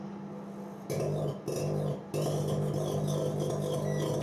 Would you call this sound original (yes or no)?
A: yes